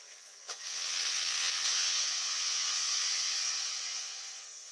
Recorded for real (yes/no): no